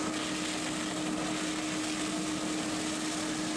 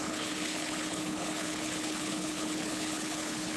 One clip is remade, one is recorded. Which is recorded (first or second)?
first